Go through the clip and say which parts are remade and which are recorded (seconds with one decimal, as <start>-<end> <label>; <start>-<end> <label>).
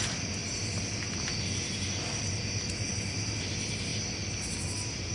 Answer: 0.0-5.1 recorded